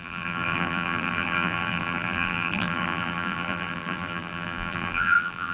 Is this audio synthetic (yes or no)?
yes